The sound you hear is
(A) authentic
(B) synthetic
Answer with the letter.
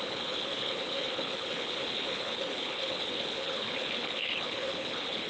B